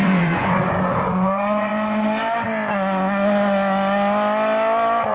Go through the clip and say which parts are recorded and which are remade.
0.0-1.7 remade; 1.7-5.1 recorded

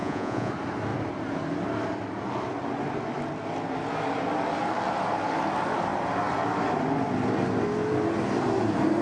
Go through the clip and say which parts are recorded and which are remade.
0.0-0.5 remade; 0.5-9.0 recorded

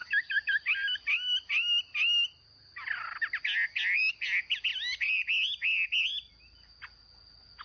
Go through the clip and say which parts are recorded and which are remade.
0.0-7.6 recorded

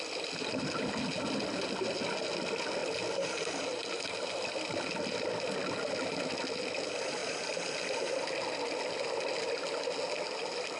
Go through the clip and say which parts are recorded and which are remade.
0.0-10.8 recorded

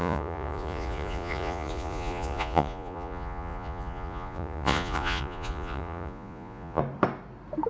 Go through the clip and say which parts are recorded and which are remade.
0.0-6.8 remade; 6.8-7.7 recorded

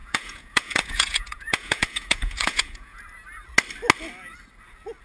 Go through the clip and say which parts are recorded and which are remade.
0.0-3.0 remade; 3.0-5.0 recorded